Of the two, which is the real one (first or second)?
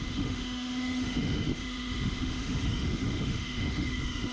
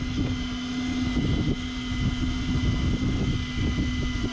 second